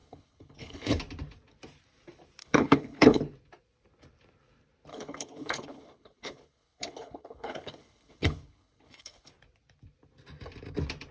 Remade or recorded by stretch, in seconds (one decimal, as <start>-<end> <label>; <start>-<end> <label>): 0.0-1.0 remade; 1.0-2.4 recorded; 2.4-3.2 remade; 3.2-4.9 recorded; 4.9-9.3 remade; 9.3-11.1 recorded